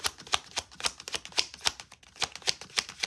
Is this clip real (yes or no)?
yes